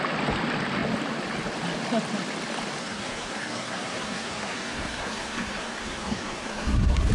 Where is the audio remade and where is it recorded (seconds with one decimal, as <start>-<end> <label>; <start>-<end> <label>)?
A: 0.0-2.8 recorded; 2.8-7.1 remade